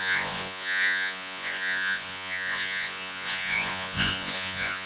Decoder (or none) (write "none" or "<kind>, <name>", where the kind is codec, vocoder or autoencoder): vocoder, Vocos